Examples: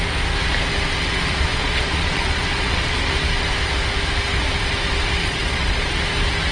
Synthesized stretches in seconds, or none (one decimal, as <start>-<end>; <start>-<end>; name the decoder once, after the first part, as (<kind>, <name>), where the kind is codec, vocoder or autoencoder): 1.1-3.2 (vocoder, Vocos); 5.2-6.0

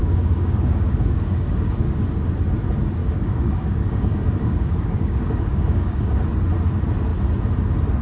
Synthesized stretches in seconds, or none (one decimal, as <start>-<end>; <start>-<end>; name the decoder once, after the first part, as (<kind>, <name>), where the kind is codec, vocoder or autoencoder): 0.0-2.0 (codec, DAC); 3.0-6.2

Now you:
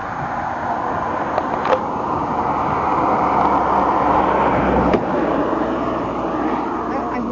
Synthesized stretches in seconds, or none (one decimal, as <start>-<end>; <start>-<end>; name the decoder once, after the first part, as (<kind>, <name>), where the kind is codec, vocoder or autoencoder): none

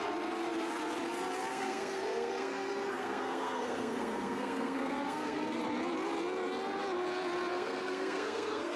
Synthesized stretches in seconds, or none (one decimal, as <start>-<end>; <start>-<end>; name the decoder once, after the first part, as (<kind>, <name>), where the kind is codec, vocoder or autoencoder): 1.5-5.6 (codec, SNAC); 7.5-8.8

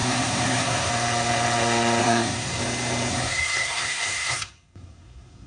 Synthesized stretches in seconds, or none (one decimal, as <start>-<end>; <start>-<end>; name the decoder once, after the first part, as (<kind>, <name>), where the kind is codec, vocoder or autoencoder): 0.0-0.9 (codec, SNAC); 2.0-2.6; 3.1-5.5

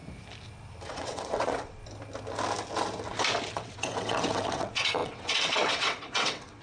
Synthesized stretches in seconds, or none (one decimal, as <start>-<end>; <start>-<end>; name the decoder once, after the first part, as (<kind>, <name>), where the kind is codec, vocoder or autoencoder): 0.9-1.8 (vocoder, WaveNeXt); 3.5-6.6

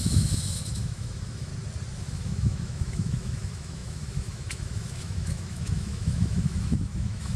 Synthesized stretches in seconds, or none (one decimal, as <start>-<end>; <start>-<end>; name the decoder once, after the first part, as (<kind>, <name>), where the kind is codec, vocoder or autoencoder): 0.0-1.5 (autoencoder, DAC-VAE); 2.0-7.4